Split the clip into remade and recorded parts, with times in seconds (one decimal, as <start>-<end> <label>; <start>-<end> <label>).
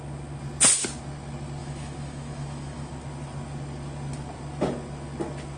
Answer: 0.0-1.6 recorded; 1.6-2.9 remade; 2.9-5.6 recorded